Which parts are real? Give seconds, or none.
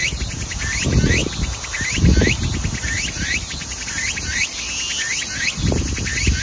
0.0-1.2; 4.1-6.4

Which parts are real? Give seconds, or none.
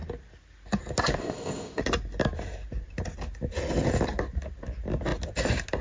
0.0-1.2; 1.8-5.8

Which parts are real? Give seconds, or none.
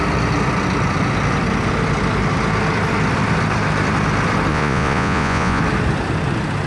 0.0-4.5; 5.6-6.7